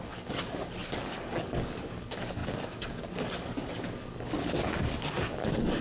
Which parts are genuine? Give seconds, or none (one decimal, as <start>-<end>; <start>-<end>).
none